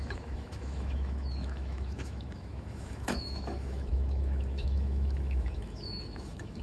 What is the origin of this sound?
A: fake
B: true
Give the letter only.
A